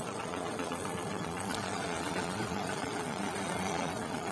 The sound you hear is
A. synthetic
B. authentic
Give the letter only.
A